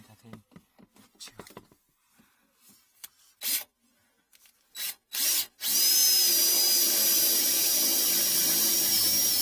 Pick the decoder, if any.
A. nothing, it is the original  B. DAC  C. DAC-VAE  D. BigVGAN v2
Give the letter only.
A